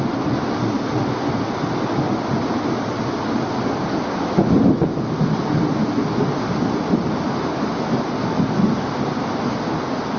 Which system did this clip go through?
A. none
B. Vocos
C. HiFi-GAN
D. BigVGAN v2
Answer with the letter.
A